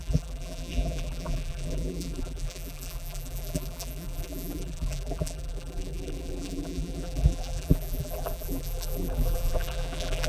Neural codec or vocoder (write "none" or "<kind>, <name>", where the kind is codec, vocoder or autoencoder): vocoder, BigVGAN v2